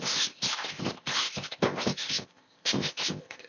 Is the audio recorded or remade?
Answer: remade